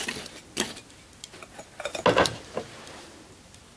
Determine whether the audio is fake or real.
real